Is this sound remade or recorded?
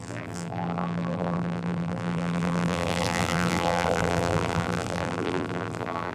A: remade